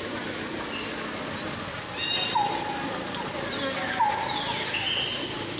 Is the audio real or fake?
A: real